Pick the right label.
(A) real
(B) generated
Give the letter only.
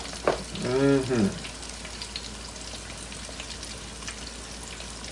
A